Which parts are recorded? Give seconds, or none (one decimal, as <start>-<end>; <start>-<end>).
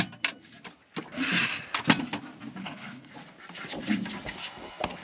0.0-2.6; 3.1-5.0